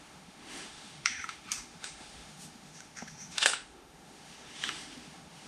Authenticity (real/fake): fake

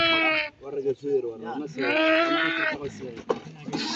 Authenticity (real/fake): real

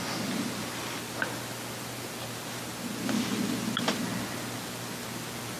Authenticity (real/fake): real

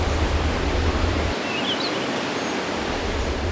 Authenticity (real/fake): real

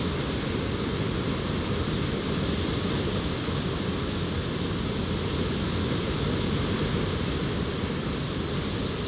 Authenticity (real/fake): real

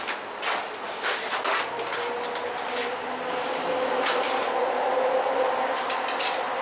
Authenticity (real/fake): real